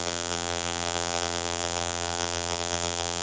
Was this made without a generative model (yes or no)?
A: no